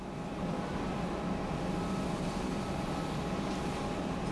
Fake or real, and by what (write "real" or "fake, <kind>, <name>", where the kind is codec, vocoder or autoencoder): real